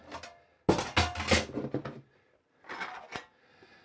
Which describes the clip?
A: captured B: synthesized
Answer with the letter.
A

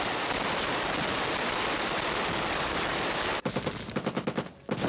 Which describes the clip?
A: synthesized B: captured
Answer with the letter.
B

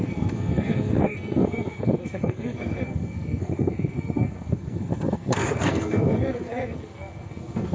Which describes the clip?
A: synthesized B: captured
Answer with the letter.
A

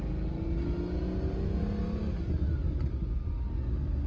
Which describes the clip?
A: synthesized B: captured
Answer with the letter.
B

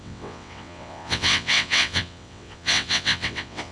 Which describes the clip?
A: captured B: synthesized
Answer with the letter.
B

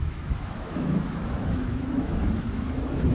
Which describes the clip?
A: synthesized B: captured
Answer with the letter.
A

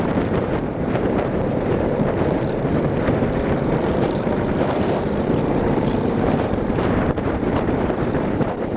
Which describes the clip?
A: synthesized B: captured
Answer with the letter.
A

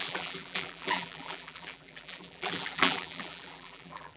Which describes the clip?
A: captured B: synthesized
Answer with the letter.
B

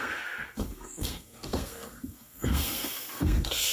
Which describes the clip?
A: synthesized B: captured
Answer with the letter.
A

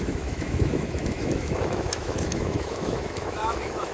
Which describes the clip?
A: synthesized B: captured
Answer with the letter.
A